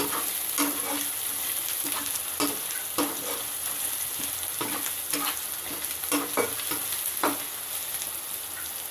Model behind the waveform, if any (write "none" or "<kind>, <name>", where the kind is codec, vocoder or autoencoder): none